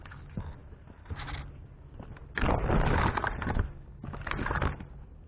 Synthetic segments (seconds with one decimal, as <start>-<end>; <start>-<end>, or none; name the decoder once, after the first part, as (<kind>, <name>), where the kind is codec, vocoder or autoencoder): none